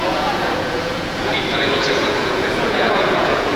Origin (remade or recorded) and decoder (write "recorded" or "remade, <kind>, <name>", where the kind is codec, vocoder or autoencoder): remade, vocoder, Vocos